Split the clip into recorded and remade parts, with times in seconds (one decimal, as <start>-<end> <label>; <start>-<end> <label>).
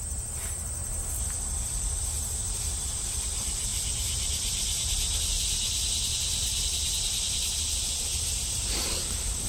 0.0-0.8 remade; 0.8-1.9 recorded; 1.9-9.5 remade